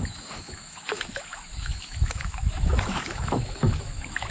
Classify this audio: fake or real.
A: fake